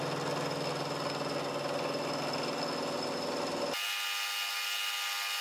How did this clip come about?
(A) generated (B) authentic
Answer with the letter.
B